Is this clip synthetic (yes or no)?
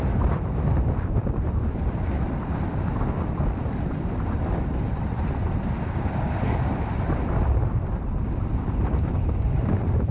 yes